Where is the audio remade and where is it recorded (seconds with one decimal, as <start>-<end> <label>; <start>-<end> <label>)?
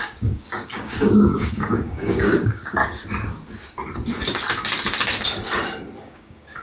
0.0-2.8 remade; 2.8-6.0 recorded; 6.0-6.6 remade